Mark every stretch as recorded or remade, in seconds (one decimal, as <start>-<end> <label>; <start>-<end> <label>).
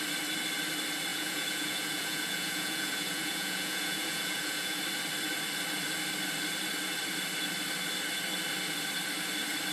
0.0-1.1 recorded; 1.1-4.8 remade; 4.8-9.7 recorded